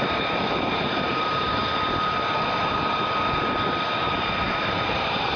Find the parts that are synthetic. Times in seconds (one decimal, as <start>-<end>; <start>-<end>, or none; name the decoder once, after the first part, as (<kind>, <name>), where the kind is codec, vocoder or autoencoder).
0.0-1.6 (vocoder, BigVGAN v2); 4.0-5.4